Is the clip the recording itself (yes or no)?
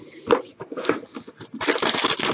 yes